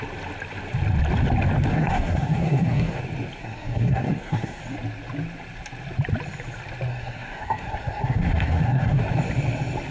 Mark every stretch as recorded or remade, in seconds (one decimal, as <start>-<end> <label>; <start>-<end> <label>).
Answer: 0.0-1.7 recorded; 1.7-3.0 remade; 3.0-3.4 recorded; 3.4-4.6 remade; 4.6-6.9 recorded; 6.9-9.0 remade; 9.0-9.9 recorded